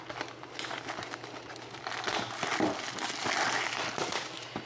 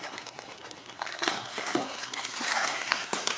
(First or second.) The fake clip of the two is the second